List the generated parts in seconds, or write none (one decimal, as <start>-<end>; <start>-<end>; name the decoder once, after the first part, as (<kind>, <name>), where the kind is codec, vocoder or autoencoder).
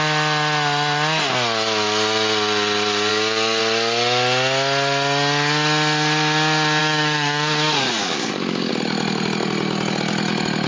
3.1-3.6 (codec, DAC); 6.8-8.7